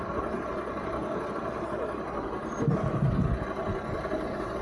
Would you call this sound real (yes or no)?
yes